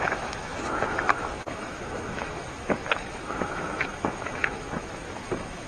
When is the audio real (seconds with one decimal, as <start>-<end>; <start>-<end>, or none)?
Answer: none